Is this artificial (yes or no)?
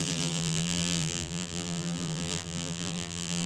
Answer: yes